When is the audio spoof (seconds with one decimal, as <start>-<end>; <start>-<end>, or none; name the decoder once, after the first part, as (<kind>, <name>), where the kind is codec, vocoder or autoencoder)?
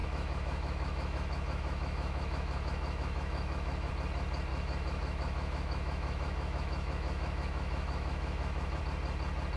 0.0-3.9 (autoencoder, DAC-VAE); 4.5-8.8